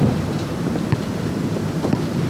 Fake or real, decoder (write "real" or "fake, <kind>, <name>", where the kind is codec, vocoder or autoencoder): fake, vocoder, BigVGAN v2